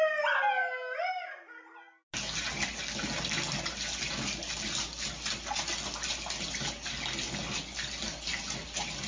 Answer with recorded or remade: recorded